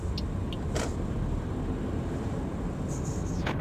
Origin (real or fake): real